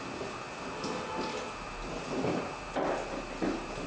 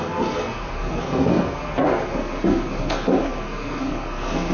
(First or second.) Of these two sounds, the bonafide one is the first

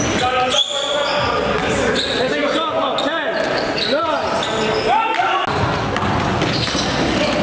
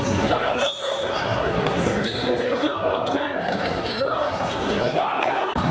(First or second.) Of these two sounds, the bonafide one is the first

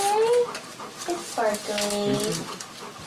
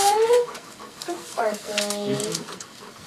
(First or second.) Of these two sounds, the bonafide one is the first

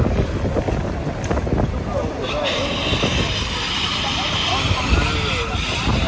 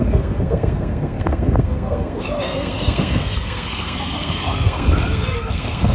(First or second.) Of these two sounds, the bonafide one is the first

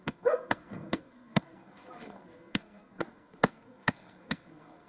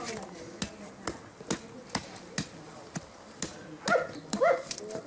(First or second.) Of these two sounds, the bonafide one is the second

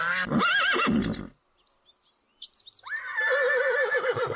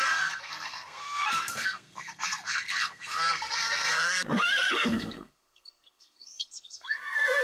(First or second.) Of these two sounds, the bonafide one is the first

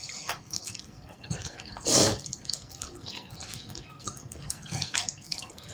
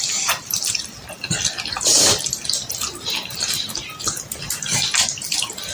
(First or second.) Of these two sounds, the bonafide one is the second